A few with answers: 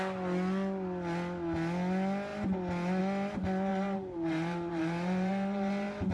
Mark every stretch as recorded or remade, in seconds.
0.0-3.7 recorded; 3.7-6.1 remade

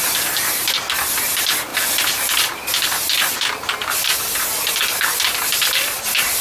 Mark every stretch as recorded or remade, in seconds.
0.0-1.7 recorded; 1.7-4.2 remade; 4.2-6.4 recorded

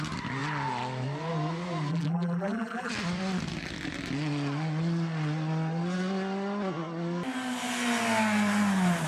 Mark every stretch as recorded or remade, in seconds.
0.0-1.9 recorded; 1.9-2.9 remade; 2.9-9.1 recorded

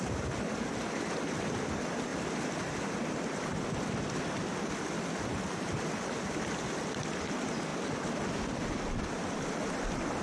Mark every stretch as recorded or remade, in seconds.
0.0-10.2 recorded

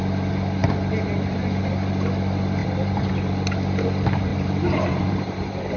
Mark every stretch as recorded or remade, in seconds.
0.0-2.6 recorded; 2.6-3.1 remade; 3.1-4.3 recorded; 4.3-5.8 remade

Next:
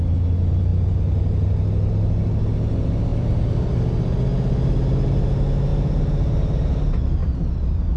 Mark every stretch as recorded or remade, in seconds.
0.0-3.1 recorded; 3.1-3.8 remade; 3.8-7.2 recorded; 7.2-8.0 remade